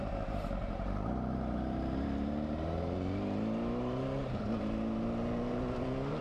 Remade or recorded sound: remade